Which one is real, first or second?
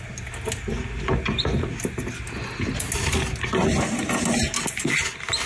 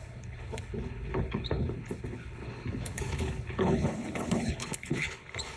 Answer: first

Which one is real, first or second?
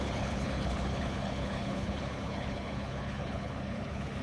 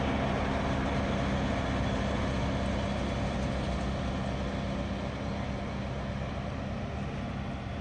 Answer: second